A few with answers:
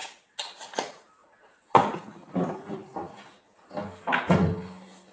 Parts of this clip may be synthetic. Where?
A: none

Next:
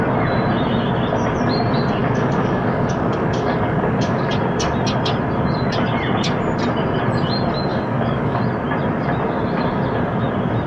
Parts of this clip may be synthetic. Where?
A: 2.0-4.3 (codec, DAC); 7.7-8.4